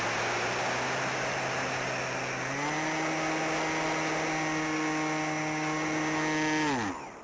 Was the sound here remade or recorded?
recorded